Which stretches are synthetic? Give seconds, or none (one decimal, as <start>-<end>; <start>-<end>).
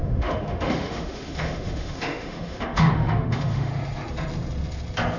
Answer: 0.0-3.7